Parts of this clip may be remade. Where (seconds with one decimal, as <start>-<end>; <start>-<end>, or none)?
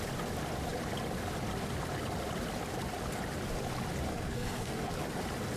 4.1-4.9